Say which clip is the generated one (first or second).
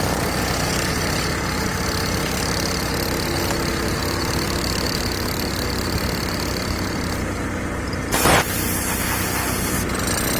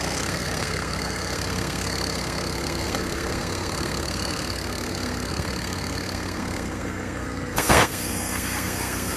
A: second